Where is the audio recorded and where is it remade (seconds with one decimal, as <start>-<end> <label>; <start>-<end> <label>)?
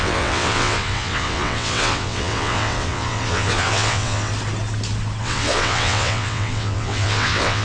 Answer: 0.0-4.3 remade; 4.3-5.2 recorded; 5.2-7.6 remade